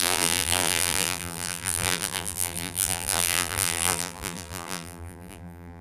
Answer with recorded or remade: remade